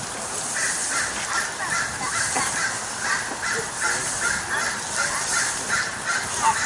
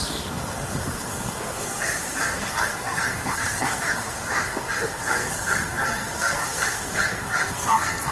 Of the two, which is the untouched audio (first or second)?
first